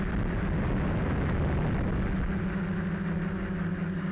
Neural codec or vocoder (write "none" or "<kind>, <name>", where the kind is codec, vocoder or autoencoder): none